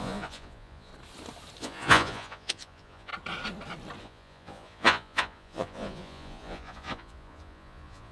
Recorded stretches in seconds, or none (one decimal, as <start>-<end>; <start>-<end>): 0.9-1.6; 3.1-4.0